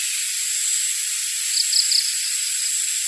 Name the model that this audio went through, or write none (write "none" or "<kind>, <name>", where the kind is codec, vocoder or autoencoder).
none